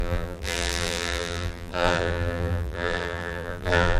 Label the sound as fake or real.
fake